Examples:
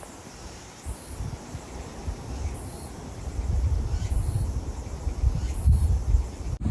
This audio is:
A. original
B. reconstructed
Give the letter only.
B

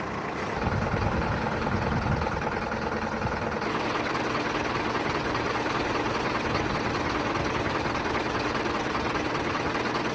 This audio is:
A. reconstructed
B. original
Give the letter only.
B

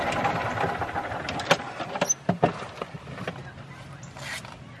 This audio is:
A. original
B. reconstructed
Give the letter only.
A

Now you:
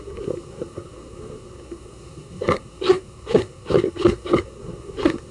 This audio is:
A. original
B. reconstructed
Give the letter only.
B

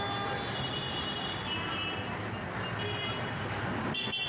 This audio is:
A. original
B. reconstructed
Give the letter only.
A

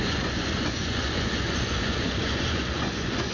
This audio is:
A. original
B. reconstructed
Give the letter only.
B